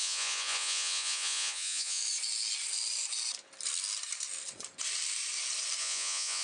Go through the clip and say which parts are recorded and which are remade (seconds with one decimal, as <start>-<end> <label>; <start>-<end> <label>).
0.0-2.0 remade; 2.0-5.8 recorded; 5.8-6.4 remade